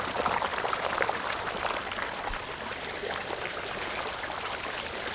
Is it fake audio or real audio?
fake